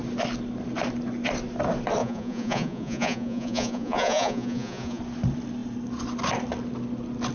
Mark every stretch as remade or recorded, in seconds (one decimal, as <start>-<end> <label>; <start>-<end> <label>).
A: 0.0-2.0 recorded; 2.0-5.0 remade; 5.0-7.3 recorded